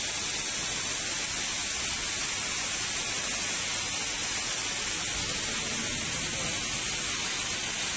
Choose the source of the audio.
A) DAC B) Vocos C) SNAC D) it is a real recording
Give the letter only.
D